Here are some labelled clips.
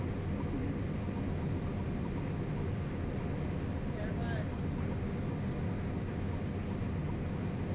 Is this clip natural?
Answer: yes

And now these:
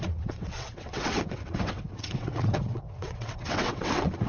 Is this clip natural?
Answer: no